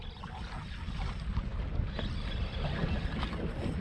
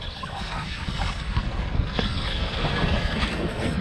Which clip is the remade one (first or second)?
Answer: second